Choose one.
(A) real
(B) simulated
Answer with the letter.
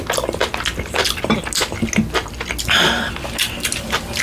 A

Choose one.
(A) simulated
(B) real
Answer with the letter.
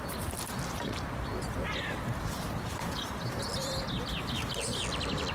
B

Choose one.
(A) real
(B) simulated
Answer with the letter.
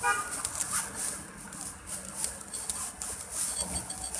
A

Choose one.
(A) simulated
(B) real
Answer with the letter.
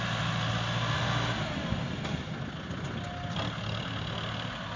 B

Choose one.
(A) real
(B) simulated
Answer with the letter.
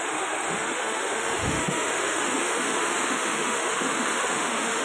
B